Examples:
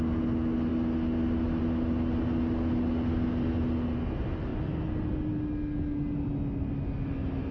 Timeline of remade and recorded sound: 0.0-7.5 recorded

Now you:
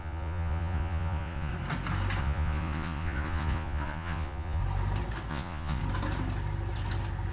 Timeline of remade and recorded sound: 0.0-1.5 remade; 1.5-2.2 recorded; 2.2-4.6 remade; 4.6-5.3 recorded; 5.3-5.8 remade; 5.8-7.3 recorded

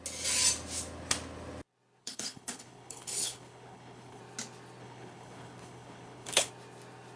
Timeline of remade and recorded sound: 0.0-2.0 recorded; 2.0-4.2 remade; 4.2-4.8 recorded; 4.8-6.5 remade; 6.5-7.2 recorded